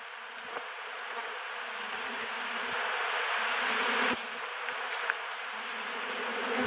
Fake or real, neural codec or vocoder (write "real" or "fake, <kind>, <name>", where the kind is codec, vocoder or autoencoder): real